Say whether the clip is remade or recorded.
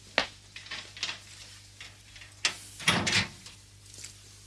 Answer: recorded